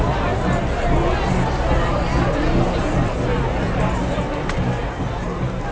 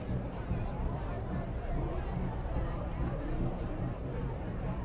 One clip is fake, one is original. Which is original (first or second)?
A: first